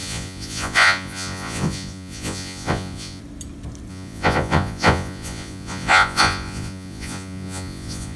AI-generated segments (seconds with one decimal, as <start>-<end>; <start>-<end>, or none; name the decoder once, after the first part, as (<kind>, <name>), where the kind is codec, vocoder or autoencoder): 0.0-3.2 (vocoder, Vocos); 3.9-8.2